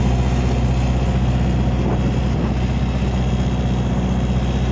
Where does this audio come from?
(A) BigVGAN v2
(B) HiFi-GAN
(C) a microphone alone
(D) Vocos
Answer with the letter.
C